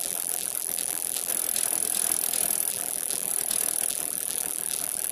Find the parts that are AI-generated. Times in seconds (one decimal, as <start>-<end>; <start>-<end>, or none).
0.0-1.3; 2.7-3.3; 3.9-5.1